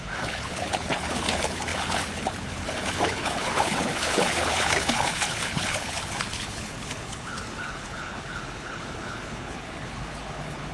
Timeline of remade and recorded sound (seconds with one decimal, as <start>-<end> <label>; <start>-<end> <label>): 0.0-10.7 remade